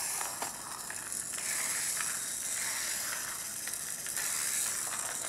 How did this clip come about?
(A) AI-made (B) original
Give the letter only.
B